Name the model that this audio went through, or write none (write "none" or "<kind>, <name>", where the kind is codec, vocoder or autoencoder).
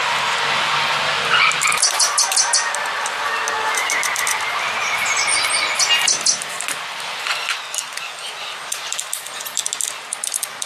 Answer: none